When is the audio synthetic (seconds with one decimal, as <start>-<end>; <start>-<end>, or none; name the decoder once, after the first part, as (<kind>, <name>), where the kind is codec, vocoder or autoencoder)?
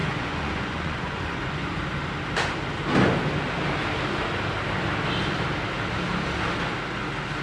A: 0.0-1.8 (vocoder, Vocos)